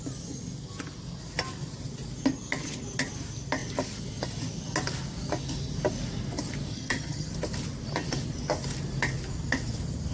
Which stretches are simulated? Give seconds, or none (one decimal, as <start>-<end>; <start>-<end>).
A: 6.7-7.3